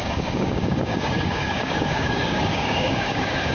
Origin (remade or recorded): remade